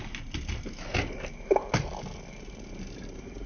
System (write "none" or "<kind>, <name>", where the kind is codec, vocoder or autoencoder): none